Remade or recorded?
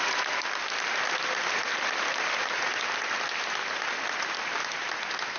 recorded